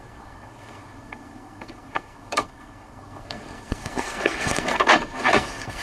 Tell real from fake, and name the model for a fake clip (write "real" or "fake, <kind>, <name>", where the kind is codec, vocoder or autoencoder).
fake, codec, SNAC